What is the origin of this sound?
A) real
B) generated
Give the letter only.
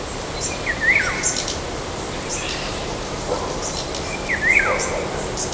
B